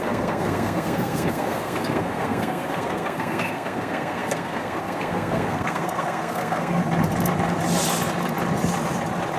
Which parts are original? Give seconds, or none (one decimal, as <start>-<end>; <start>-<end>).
6.8-9.4